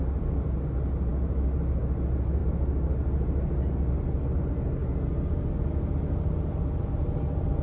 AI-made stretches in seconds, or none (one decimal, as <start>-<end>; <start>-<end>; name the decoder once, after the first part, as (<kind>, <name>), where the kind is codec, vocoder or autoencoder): none